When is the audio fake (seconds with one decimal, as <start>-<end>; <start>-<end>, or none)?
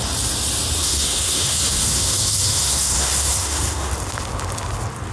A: 0.8-3.9